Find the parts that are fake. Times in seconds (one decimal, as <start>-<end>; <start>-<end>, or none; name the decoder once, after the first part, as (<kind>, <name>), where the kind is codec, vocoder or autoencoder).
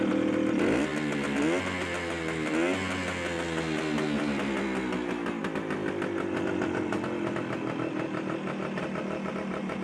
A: none